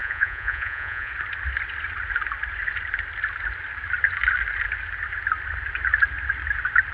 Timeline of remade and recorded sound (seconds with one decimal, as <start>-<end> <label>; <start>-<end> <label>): 0.0-1.1 remade; 1.1-6.9 recorded